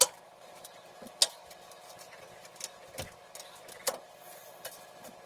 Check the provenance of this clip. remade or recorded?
recorded